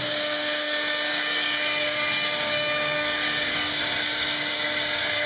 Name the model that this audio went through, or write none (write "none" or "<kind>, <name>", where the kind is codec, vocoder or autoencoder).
codec, DAC